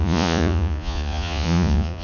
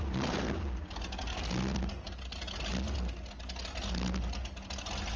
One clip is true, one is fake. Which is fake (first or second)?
first